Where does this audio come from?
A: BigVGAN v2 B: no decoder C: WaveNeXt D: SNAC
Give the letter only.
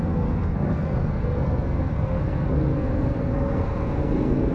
D